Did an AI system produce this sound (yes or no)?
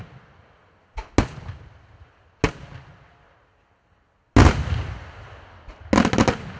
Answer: no